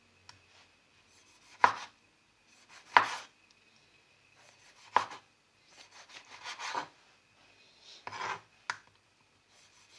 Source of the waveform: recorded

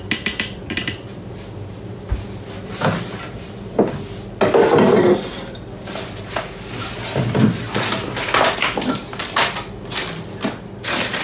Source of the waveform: recorded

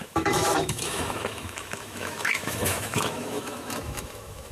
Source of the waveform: remade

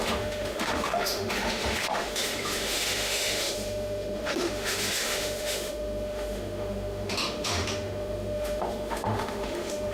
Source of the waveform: remade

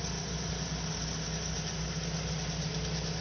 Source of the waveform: recorded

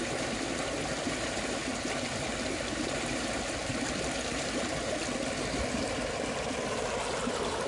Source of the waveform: recorded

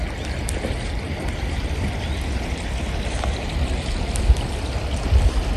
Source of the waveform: recorded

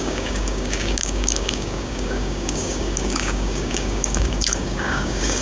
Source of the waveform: remade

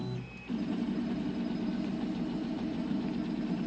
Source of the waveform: recorded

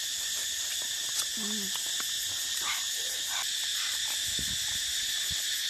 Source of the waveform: recorded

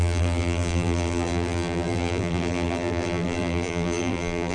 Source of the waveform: remade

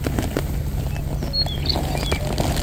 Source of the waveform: recorded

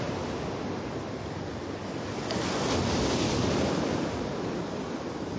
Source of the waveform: recorded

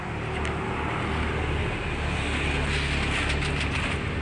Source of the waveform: recorded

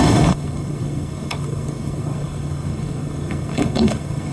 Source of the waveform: remade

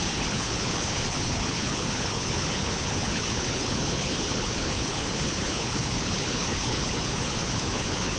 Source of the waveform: remade